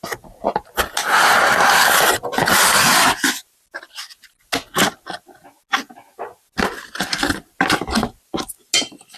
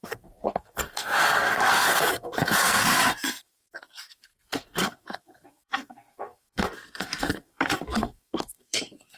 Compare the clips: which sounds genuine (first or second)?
first